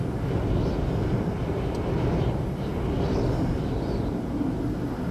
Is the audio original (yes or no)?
yes